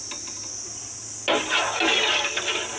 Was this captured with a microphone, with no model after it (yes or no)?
yes